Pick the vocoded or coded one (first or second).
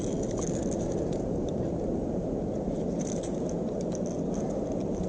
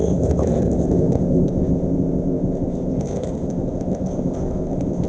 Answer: second